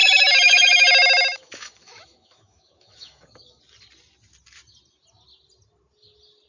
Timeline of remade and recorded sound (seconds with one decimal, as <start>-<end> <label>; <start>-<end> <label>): 0.0-3.6 remade; 3.6-6.5 recorded